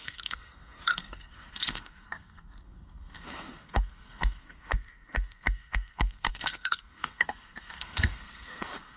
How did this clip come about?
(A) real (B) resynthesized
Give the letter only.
B